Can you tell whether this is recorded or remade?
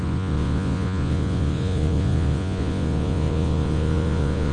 remade